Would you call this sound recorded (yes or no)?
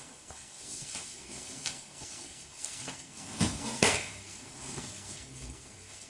no